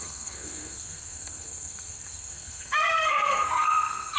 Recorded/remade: remade